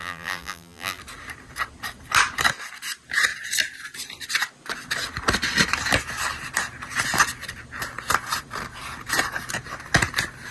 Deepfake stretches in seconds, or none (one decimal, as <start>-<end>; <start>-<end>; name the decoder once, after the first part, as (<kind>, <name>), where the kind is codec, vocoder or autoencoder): 0.0-1.0 (vocoder, BigVGAN v2)